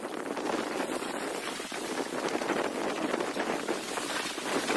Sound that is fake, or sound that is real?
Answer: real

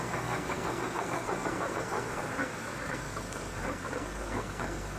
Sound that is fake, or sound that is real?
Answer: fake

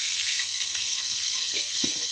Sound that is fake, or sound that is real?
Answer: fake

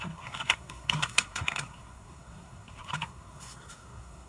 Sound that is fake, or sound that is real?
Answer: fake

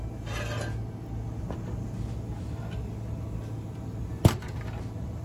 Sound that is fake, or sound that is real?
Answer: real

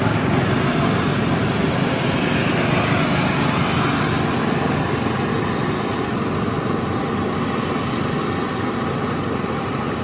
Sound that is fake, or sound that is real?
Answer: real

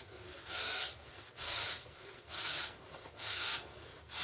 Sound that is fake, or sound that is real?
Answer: fake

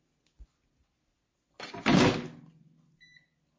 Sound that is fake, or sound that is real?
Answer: real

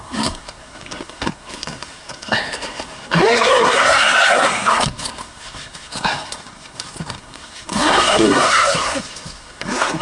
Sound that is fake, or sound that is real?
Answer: fake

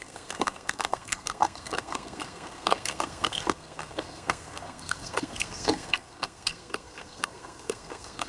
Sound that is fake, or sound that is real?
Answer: fake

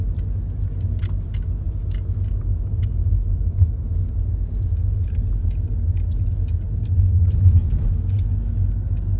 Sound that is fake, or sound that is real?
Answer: real